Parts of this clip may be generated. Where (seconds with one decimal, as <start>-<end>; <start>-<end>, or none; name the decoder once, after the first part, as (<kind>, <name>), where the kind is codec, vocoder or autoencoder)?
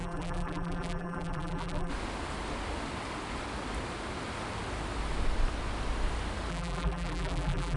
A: 0.0-1.9 (vocoder, BigVGAN v2); 6.5-7.8